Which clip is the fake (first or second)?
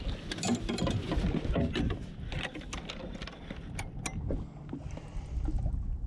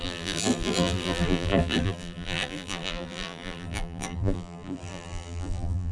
second